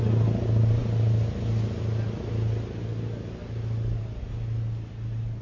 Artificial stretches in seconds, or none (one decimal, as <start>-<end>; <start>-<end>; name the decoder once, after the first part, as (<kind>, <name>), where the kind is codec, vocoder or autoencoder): none